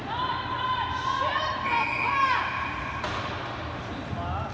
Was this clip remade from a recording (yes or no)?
no